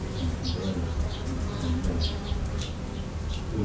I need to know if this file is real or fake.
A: real